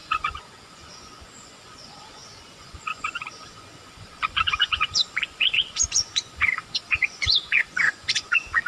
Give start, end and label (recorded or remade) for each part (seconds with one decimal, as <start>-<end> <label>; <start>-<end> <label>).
0.0-8.7 remade